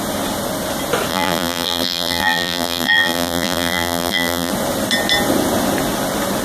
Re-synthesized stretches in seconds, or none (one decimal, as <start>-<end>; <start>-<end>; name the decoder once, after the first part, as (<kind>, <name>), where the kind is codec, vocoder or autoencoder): 1.1-4.5 (vocoder, BigVGAN v2)